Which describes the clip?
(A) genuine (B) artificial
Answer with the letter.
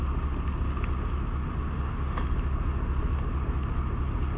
A